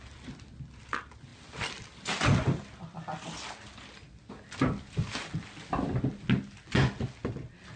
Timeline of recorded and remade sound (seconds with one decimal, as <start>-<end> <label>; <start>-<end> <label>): 0.0-7.8 recorded